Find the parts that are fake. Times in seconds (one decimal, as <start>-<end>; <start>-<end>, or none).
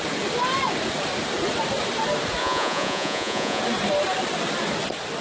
2.4-3.6